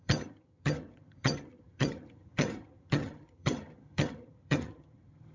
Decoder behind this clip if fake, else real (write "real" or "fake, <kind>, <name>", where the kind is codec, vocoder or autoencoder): fake, vocoder, HiFi-GAN